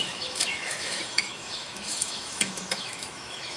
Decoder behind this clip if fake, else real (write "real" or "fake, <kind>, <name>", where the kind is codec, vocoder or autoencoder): fake, autoencoder, DAC-VAE